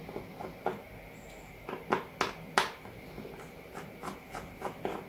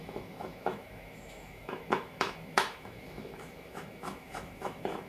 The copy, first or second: second